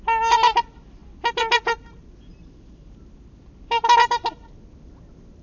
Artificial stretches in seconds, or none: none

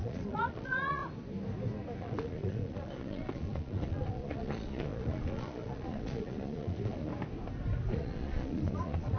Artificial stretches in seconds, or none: 0.0-1.0 (vocoder, Vocos); 2.0-7.1; 7.9-9.2

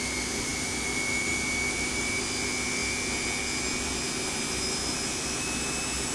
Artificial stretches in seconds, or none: none